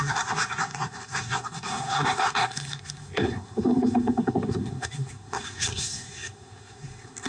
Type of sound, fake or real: fake